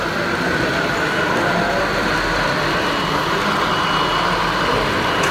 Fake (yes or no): no